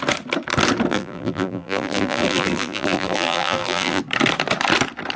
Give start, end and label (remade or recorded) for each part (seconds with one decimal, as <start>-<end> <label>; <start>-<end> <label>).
0.0-0.9 recorded; 0.9-4.0 remade; 4.0-5.2 recorded